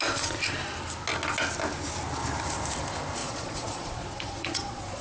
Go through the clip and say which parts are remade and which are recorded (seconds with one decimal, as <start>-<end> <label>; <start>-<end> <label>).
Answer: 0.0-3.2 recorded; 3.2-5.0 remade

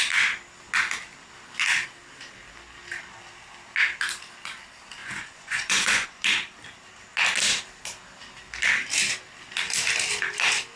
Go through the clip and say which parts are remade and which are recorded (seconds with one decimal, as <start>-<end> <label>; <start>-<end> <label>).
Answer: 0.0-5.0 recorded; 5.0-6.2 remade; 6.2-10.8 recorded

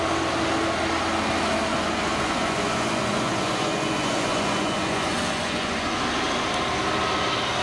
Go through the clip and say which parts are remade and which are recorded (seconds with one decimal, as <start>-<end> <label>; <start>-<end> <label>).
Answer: 0.0-1.7 recorded; 1.7-6.0 remade; 6.0-7.6 recorded